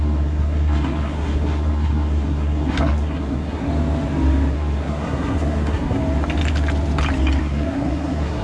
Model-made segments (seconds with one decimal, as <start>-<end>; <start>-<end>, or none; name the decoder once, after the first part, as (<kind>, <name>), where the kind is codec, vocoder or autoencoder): 0.0-3.7 (codec, SNAC); 4.5-6.0; 7.4-8.4